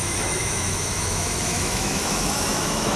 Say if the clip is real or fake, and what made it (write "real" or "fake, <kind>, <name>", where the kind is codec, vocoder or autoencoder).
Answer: fake, autoencoder, DAC-VAE